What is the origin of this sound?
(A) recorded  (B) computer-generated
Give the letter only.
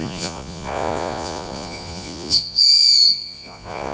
B